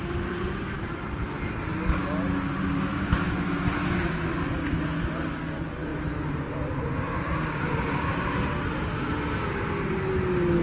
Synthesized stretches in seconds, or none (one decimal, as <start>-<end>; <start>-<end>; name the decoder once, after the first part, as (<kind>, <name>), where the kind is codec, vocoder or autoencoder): 2.9-4.3 (autoencoder, DAC-VAE)